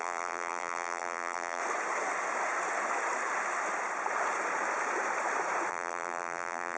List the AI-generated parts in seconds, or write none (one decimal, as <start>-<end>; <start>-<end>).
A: 0.0-1.6; 5.7-6.8